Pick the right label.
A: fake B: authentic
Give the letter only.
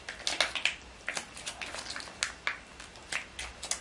B